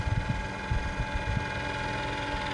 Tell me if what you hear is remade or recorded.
recorded